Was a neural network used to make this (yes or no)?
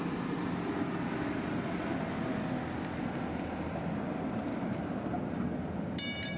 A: no